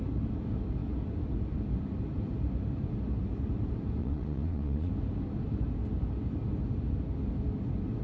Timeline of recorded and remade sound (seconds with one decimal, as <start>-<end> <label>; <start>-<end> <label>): 0.0-4.0 recorded; 4.0-4.9 remade; 4.9-8.0 recorded